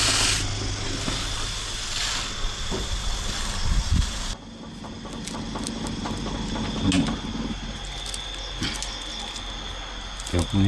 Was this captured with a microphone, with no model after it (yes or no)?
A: yes